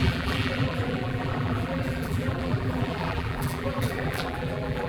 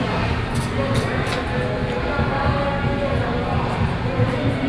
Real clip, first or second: second